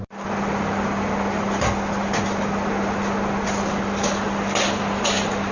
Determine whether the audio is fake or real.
real